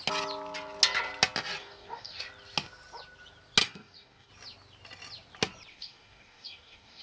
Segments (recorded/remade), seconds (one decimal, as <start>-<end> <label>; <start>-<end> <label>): 0.0-1.6 recorded; 1.6-2.2 remade; 2.2-3.6 recorded; 3.6-4.3 remade; 4.3-5.7 recorded; 5.7-7.0 remade